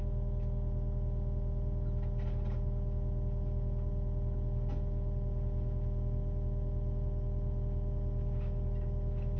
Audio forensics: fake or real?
real